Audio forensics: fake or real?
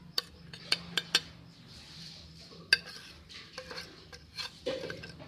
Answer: real